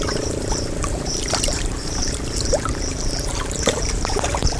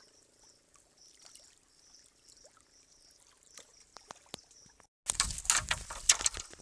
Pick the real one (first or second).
second